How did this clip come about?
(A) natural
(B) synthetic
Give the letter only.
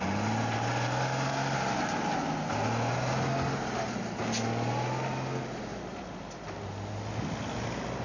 A